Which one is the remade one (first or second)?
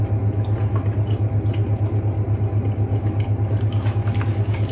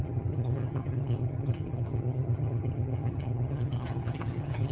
second